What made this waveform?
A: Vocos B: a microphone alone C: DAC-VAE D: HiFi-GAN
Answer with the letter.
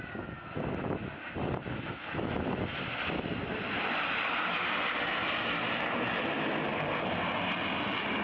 B